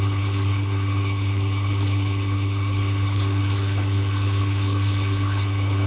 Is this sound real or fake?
fake